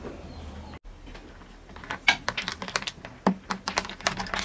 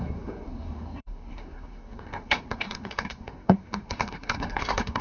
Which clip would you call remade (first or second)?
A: second